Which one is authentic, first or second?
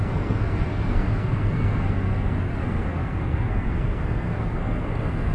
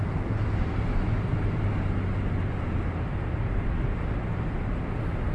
second